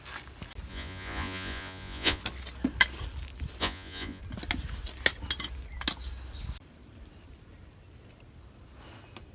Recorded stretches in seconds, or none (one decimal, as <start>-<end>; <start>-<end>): 0.0-0.7; 2.2-3.6; 4.2-9.3